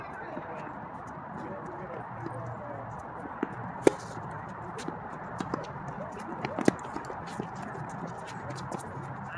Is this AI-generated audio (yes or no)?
no